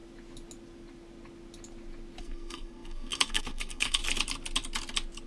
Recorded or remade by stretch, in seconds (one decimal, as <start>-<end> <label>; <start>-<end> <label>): 0.0-2.2 recorded; 2.2-4.0 remade; 4.0-5.3 recorded